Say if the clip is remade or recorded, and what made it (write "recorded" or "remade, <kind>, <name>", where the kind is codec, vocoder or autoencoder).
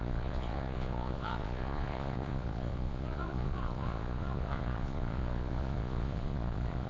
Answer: remade, vocoder, Vocos